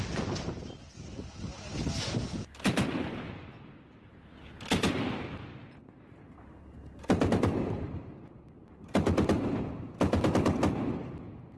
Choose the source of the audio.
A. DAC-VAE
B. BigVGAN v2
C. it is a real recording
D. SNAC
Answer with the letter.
C